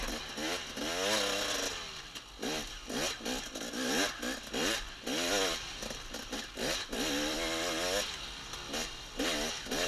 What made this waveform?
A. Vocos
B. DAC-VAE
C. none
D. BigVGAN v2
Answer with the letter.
C